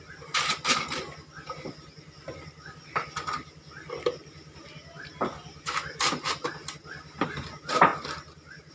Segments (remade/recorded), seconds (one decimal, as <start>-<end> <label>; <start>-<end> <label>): 0.0-8.7 recorded